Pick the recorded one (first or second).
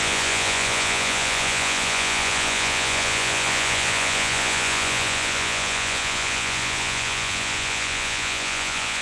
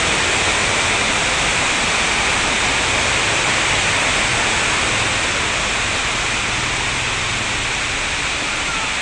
second